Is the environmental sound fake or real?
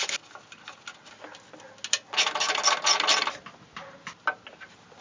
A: real